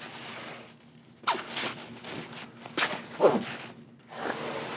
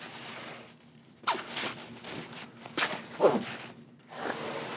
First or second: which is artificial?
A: second